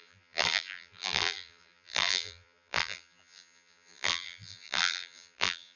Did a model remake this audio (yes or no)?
yes